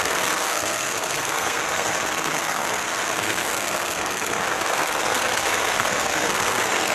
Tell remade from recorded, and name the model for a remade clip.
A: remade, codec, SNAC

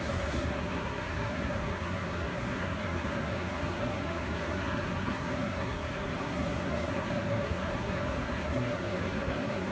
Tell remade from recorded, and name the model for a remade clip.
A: remade, codec, SNAC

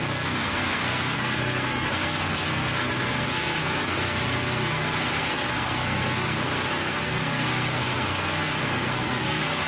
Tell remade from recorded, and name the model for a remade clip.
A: remade, codec, SNAC